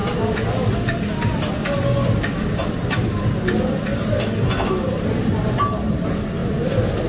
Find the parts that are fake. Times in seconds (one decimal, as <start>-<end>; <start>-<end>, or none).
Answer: 2.6-5.0; 6.4-7.1